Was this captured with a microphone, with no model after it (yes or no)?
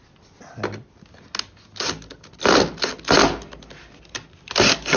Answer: yes